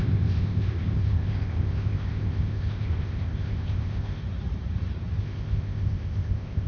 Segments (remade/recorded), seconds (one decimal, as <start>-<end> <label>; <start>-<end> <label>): 0.0-4.2 remade; 4.2-5.2 recorded; 5.2-6.7 remade